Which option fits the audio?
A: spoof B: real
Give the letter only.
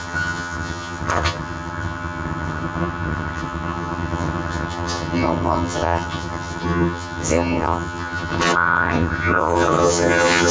A